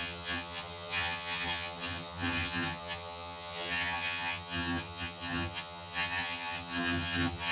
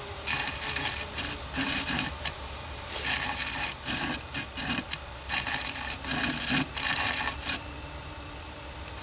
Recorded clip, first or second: second